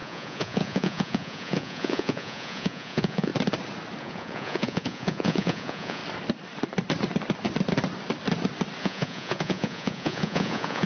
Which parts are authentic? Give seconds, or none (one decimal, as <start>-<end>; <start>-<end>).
3.3-4.0; 6.0-8.8